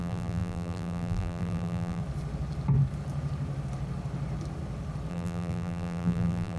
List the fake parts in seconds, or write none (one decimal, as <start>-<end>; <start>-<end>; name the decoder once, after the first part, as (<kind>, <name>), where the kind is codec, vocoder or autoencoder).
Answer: 0.0-2.0 (vocoder, BigVGAN v2); 5.1-6.6